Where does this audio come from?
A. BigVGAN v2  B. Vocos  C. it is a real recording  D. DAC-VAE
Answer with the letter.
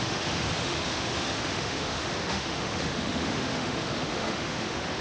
D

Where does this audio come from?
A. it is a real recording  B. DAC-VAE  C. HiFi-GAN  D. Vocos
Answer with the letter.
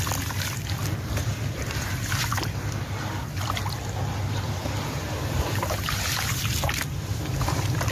A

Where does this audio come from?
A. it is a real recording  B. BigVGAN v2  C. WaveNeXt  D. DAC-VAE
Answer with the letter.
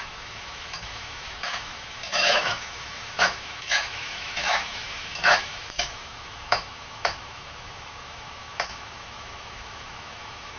D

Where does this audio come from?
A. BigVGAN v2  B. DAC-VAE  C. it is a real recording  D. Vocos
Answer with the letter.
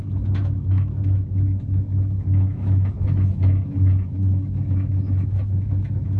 B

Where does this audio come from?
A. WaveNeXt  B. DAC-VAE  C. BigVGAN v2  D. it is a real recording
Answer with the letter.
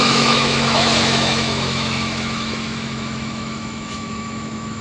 B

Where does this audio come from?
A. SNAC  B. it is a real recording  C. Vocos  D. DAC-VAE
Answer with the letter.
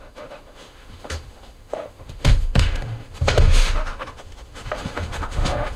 D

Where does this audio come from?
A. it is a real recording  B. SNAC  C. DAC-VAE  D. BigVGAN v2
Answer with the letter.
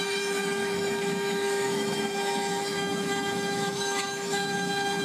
C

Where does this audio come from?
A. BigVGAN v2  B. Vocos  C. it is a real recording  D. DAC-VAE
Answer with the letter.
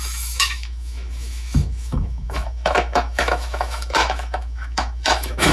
D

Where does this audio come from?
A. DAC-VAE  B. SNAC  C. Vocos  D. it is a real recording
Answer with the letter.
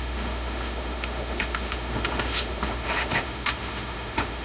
A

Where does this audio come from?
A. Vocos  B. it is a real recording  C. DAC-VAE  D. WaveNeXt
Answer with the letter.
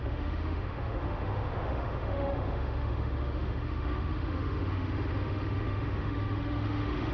C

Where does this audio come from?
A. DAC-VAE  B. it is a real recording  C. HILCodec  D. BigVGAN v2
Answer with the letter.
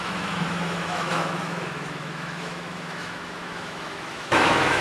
A